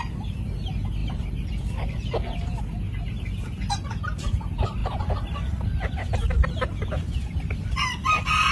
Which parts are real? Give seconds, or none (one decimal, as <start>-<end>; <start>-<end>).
0.0-1.0; 2.6-8.5